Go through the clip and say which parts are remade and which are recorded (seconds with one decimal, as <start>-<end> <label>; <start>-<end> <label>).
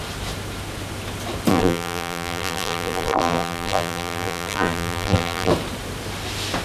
0.0-1.5 recorded; 1.5-5.5 remade; 5.5-6.6 recorded